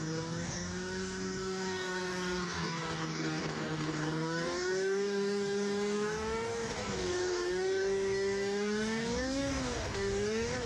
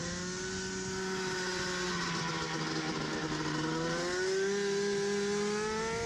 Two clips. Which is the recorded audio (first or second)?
second